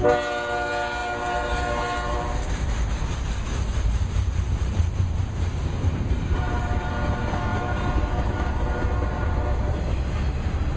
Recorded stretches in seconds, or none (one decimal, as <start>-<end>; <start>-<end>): 0.0-1.0; 2.9-3.5; 6.4-7.5; 10.0-10.8